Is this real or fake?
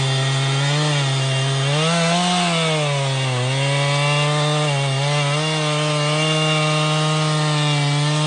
real